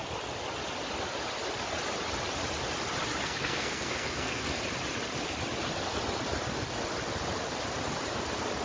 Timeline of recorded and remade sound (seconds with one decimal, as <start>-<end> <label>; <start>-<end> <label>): 0.0-3.2 recorded; 3.2-4.5 remade; 4.5-8.6 recorded